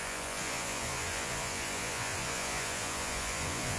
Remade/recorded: remade